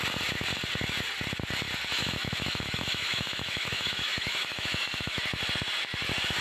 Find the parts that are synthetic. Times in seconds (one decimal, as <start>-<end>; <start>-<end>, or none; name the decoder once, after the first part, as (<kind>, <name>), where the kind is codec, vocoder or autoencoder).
2.0-5.2 (autoencoder, DAC-VAE)